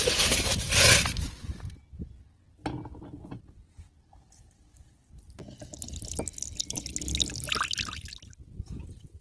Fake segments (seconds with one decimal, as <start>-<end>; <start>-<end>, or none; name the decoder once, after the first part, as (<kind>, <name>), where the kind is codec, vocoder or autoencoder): none